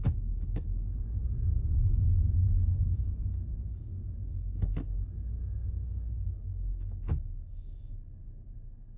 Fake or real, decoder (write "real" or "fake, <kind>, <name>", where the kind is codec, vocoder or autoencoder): fake, codec, DAC